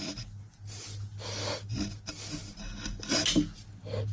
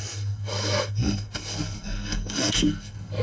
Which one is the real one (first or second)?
first